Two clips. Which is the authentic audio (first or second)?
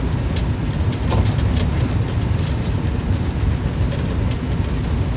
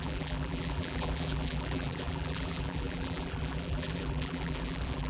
first